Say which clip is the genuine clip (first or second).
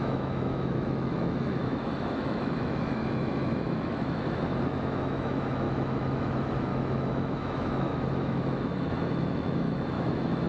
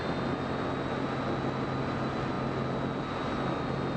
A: second